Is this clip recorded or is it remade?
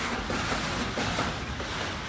recorded